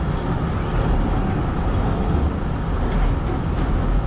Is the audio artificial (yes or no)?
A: no